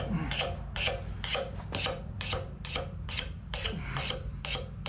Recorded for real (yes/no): no